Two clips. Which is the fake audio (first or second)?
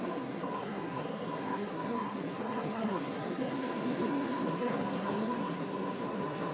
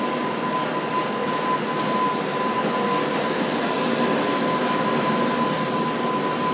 first